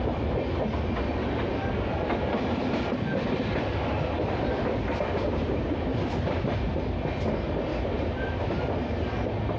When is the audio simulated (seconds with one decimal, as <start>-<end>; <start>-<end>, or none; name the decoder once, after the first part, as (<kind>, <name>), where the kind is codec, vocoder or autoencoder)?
1.2-4.5 (vocoder, BigVGAN v2); 7.7-8.6